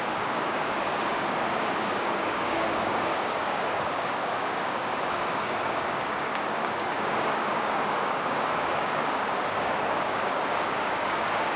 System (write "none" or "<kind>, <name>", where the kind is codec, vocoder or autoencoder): codec, DAC